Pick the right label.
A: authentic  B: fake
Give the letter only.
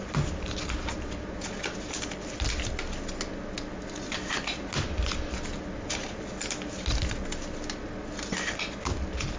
A